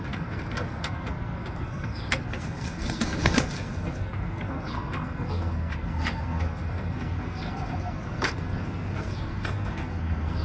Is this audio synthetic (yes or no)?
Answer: yes